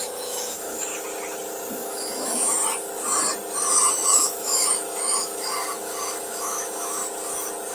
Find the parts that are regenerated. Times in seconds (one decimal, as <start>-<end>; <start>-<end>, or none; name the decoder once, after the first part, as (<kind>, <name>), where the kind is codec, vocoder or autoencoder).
0.0-0.9 (autoencoder, DAC-VAE); 1.7-2.6; 3.9-7.0